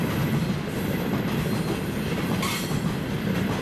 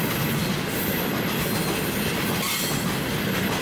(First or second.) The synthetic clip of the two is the first